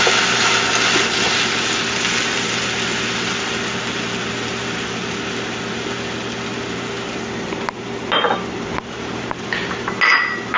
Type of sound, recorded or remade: recorded